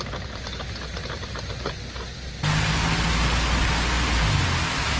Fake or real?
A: real